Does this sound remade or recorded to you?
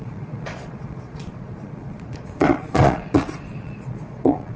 remade